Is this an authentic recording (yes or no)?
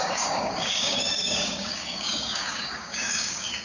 no